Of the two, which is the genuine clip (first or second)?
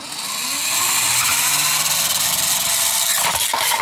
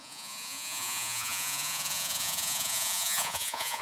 first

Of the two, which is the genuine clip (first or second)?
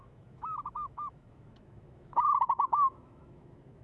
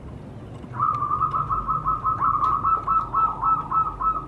second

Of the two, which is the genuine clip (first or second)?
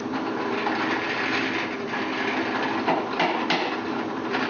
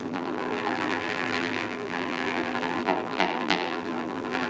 first